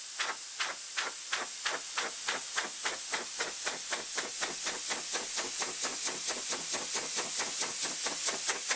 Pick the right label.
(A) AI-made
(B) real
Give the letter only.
B